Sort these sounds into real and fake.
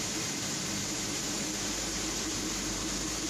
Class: fake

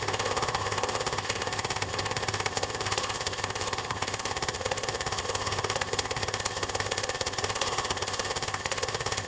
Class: fake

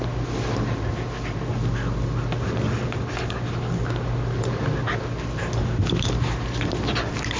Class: real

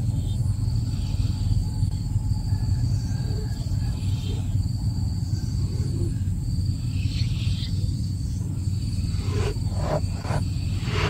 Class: real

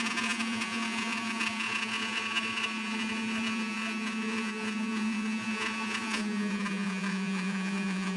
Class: fake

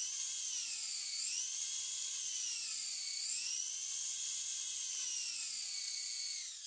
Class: fake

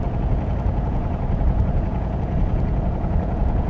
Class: fake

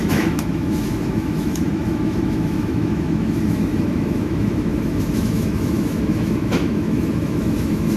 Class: fake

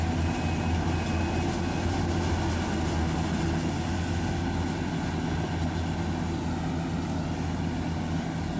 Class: real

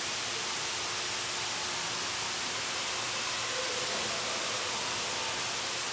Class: real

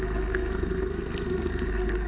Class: fake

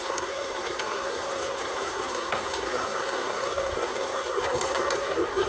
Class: fake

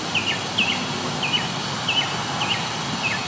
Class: real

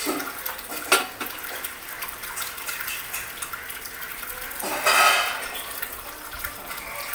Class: real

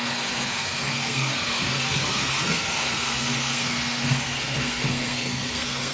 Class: fake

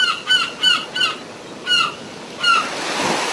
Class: real